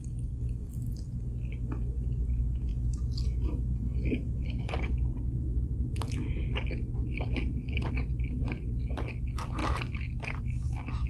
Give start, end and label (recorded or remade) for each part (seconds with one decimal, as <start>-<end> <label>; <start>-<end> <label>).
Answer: 0.0-11.1 recorded